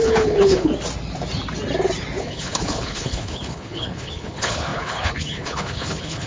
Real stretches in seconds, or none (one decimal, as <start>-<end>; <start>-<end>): 0.7-2.2